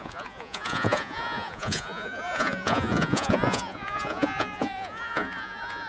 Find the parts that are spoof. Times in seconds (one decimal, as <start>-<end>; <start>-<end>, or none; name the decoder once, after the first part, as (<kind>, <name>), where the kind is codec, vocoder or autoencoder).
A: 0.0-5.9 (vocoder, Vocos)